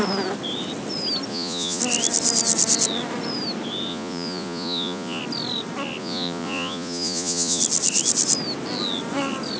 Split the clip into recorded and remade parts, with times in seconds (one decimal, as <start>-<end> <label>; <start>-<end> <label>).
0.0-1.3 recorded; 1.3-1.8 remade; 1.8-3.9 recorded; 3.9-5.2 remade; 5.2-6.0 recorded; 6.0-7.6 remade; 7.6-9.6 recorded